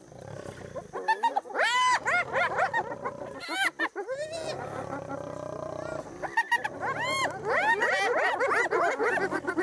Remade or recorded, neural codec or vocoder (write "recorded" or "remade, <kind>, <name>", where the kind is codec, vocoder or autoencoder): recorded